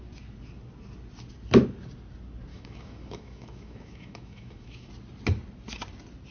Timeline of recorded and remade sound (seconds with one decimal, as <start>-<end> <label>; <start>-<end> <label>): 0.0-2.5 recorded; 2.5-4.9 remade; 4.9-6.3 recorded